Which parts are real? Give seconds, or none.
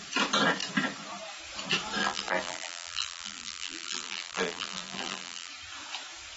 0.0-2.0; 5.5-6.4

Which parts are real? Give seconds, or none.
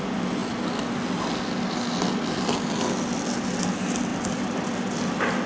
0.0-4.1; 5.0-5.5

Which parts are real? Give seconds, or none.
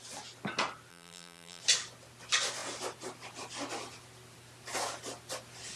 0.0-0.9; 1.6-5.8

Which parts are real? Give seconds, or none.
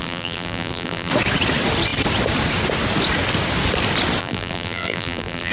1.1-4.2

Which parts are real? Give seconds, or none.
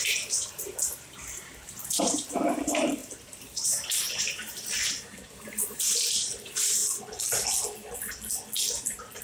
6.8-9.2